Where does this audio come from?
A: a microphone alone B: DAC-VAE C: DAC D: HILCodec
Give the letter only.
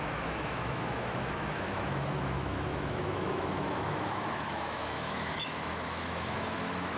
B